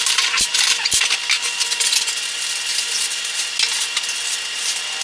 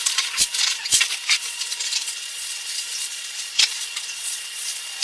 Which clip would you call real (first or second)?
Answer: first